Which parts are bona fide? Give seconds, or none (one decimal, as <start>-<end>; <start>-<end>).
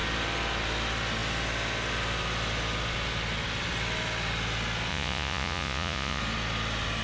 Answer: 0.0-4.9; 6.2-7.0